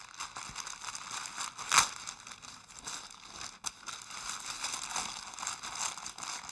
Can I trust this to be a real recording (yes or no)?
yes